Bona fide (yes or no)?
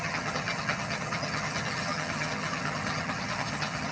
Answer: no